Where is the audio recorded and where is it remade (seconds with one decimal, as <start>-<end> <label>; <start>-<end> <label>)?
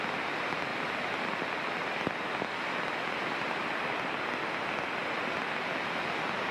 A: 0.0-6.5 recorded